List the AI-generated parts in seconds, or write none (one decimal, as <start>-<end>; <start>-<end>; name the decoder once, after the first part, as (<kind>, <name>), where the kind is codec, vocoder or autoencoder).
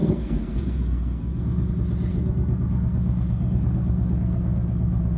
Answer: 0.0-1.7 (codec, SNAC); 2.1-5.2